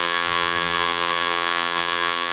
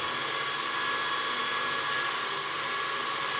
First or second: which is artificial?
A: first